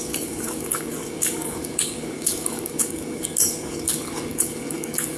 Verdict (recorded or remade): remade